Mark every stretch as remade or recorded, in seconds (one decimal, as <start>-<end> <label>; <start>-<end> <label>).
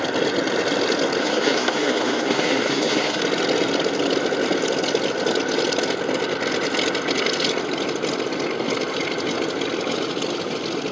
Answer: 0.0-1.2 recorded; 1.2-3.2 remade; 3.2-10.9 recorded